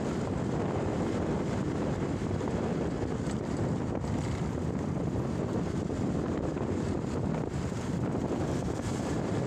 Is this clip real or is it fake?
fake